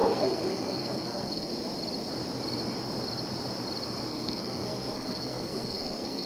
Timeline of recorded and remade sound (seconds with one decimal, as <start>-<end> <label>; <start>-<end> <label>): 0.0-1.5 remade; 1.5-4.1 recorded; 4.1-6.3 remade